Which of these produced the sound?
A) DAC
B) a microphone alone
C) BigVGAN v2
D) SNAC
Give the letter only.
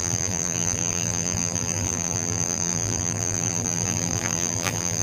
C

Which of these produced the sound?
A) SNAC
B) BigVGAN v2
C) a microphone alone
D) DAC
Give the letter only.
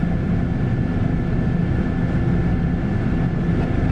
C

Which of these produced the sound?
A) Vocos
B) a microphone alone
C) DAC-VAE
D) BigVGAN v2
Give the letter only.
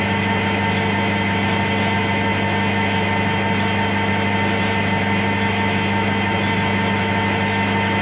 B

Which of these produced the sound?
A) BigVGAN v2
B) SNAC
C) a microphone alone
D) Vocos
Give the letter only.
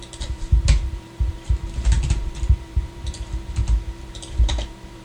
A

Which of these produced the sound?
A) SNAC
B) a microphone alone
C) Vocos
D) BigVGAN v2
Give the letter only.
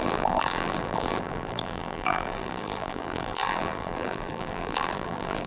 D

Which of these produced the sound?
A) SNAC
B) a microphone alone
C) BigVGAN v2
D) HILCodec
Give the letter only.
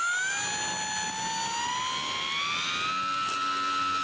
B